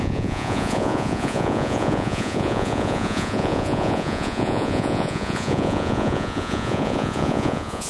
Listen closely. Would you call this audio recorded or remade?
remade